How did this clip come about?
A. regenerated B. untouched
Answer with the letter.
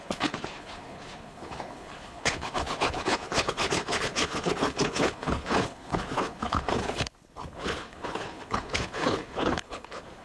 A